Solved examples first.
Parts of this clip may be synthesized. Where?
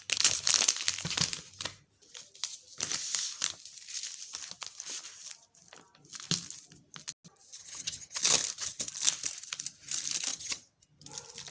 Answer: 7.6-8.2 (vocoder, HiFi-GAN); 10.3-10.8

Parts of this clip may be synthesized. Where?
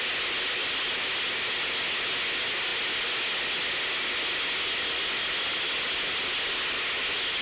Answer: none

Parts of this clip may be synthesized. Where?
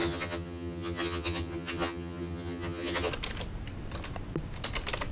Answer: 0.0-3.1 (vocoder, HiFi-GAN)